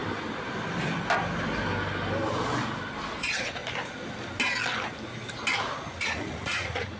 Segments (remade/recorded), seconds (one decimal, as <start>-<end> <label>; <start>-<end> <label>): 0.0-3.1 recorded; 3.1-3.6 remade; 3.6-5.6 recorded; 5.6-7.0 remade